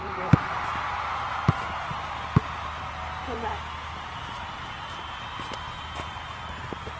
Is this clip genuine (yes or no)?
yes